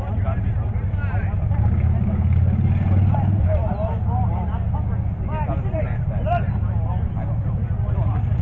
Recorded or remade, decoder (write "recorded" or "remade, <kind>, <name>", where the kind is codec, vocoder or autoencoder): recorded